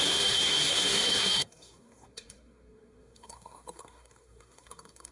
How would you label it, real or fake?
fake